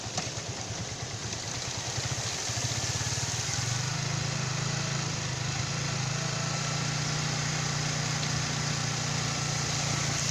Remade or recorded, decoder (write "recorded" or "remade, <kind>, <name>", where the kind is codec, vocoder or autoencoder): recorded